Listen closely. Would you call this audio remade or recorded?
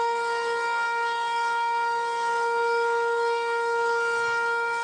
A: remade